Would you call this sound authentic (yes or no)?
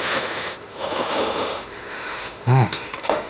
no